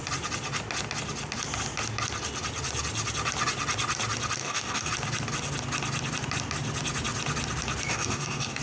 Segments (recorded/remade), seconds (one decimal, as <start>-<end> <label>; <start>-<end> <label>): 0.0-4.4 recorded; 4.4-4.9 remade; 4.9-7.9 recorded; 7.9-8.6 remade